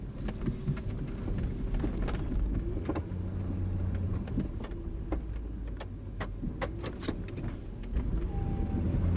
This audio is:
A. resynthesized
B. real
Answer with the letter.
B